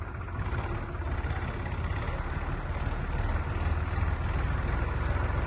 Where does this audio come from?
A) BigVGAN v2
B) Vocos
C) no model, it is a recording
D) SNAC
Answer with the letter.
C